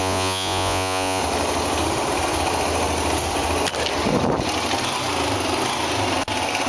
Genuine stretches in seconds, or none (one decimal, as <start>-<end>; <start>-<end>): 1.2-6.7